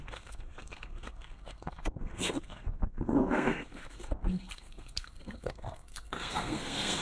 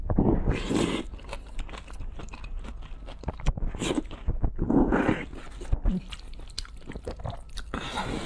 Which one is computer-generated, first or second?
first